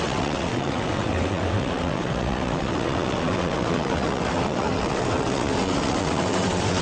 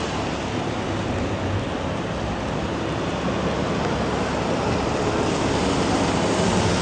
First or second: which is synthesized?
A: first